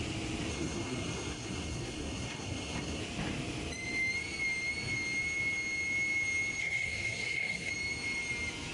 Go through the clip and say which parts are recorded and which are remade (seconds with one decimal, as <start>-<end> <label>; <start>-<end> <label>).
0.0-0.5 recorded; 0.5-3.0 remade; 3.0-6.6 recorded; 6.6-7.7 remade; 7.7-8.7 recorded

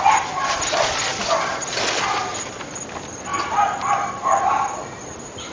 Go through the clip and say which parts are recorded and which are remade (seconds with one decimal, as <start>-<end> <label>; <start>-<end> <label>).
0.0-3.3 recorded; 3.3-3.8 remade; 3.8-5.5 recorded

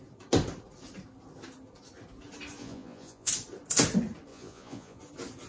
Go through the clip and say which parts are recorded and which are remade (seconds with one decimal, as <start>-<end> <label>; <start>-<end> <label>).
0.0-2.6 recorded; 2.6-3.3 remade; 3.3-4.3 recorded; 4.3-5.0 remade; 5.0-5.5 recorded

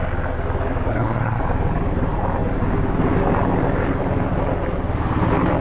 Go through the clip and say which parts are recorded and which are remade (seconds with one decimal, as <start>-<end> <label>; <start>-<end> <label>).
0.0-0.9 recorded; 0.9-1.4 remade; 1.4-5.6 recorded

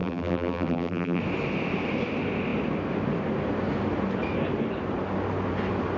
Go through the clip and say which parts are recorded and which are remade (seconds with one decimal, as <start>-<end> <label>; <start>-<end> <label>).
0.0-1.2 remade; 1.2-6.0 recorded

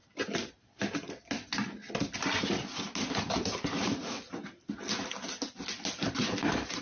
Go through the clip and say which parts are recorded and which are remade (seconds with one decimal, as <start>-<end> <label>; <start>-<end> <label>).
0.0-1.1 remade; 1.1-6.8 recorded

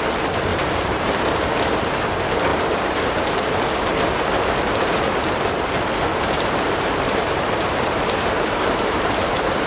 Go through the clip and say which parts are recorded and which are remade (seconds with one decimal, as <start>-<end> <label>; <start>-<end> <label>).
0.0-0.5 recorded; 0.5-1.1 remade; 1.1-2.5 recorded; 2.5-3.5 remade; 3.5-6.1 recorded; 6.1-9.7 remade